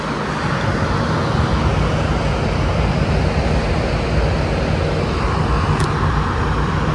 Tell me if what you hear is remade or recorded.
recorded